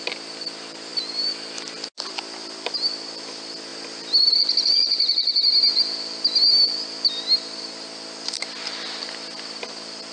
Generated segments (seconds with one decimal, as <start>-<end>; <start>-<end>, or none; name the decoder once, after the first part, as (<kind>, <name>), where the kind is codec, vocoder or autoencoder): none